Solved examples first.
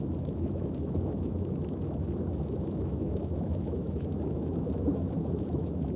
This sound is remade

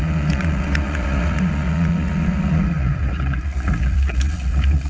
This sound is remade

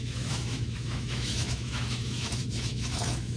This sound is remade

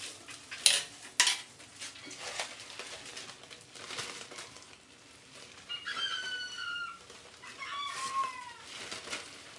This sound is recorded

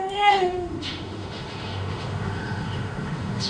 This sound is remade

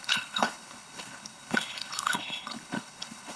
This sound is remade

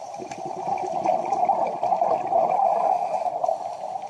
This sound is recorded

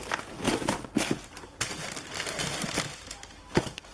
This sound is recorded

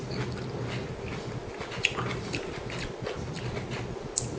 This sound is recorded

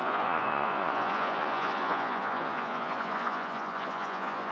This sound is remade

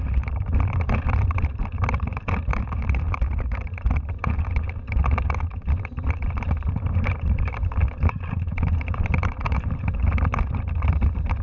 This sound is remade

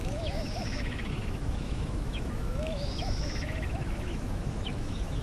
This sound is remade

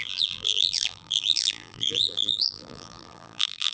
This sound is remade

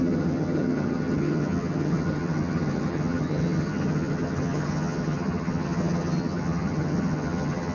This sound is remade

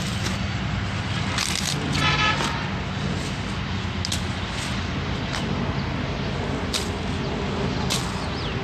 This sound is recorded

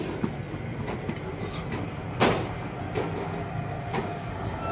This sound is recorded